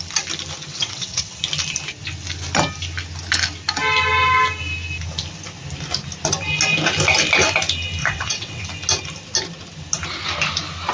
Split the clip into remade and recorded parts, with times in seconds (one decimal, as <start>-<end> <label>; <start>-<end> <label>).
0.0-0.7 recorded; 0.7-1.4 remade; 1.4-8.0 recorded; 8.0-8.6 remade; 8.6-10.9 recorded